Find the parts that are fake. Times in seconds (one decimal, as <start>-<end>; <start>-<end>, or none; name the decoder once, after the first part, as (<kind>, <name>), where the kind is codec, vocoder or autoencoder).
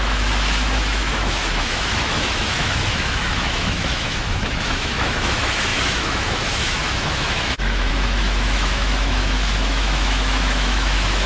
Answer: 0.0-11.3 (autoencoder, DAC-VAE)